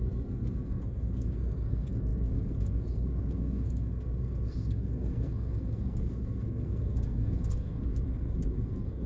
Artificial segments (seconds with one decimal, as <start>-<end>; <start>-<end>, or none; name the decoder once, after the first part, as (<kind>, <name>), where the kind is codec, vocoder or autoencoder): 0.0-9.1 (codec, SNAC)